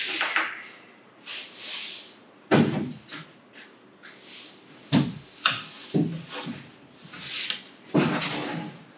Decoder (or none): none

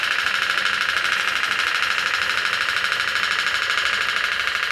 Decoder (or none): none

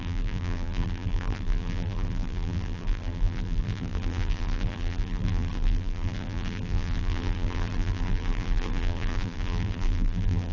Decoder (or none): vocoder, BigVGAN v2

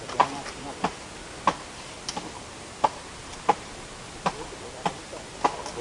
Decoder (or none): none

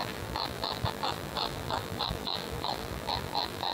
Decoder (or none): vocoder, BigVGAN v2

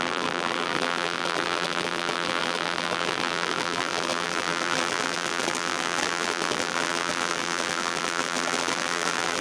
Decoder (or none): vocoder, BigVGAN v2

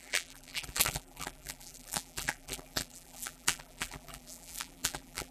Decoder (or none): vocoder, BigVGAN v2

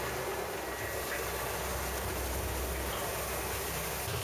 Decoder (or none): none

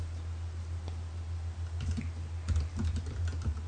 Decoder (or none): none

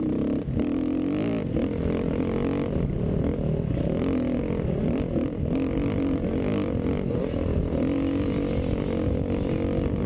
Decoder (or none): none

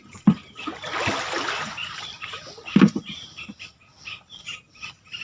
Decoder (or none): vocoder, BigVGAN v2